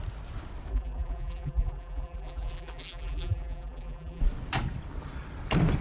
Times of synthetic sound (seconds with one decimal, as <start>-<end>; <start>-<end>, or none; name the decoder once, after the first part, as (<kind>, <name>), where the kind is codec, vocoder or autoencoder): 0.7-4.2 (vocoder, BigVGAN v2)